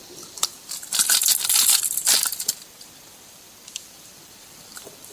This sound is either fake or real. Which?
fake